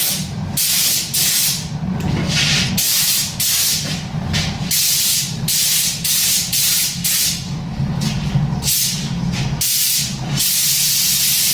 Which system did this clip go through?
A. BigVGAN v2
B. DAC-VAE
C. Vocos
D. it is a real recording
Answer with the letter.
D